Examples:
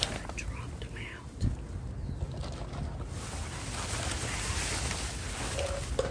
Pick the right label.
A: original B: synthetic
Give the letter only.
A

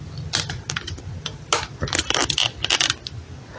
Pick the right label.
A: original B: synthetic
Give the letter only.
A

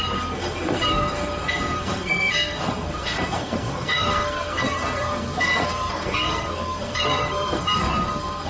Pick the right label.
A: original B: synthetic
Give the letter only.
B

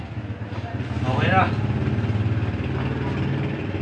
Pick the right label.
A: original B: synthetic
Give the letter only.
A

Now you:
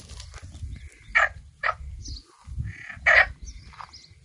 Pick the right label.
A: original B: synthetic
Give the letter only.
A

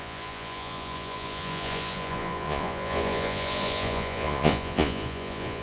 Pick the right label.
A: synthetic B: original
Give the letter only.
A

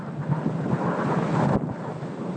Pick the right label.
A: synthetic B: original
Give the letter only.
B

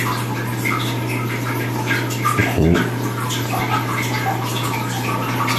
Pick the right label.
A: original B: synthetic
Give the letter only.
A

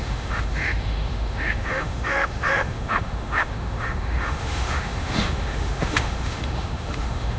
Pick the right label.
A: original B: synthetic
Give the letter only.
B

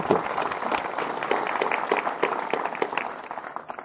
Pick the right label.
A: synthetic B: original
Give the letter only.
B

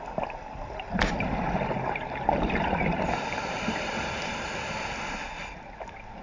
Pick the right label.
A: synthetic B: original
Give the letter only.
B